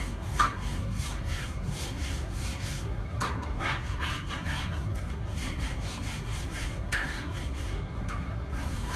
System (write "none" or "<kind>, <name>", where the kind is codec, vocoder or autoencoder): codec, SNAC